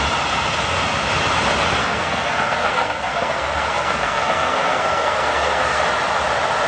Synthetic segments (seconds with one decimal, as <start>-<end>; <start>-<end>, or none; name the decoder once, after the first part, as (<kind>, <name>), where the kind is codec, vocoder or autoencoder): 1.8-5.8 (codec, SNAC)